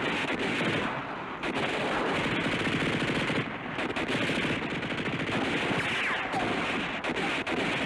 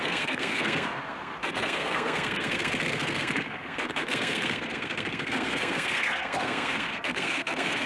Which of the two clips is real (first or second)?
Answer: first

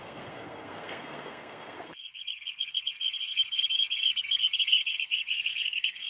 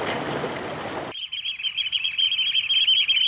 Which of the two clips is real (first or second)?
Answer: second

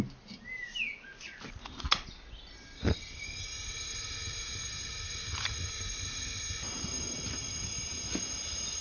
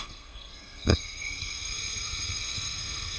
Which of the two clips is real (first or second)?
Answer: first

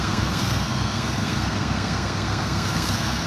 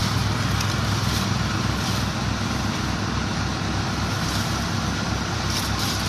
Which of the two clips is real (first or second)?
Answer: second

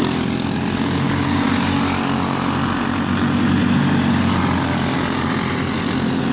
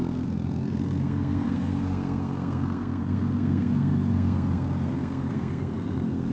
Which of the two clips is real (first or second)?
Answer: first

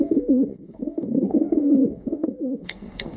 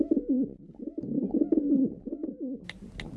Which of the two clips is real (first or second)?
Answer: second